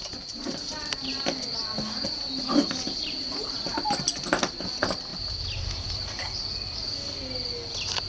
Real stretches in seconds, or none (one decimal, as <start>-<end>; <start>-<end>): 0.0-8.1